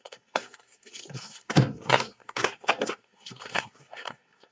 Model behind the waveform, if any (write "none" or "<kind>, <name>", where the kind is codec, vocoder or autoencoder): codec, SNAC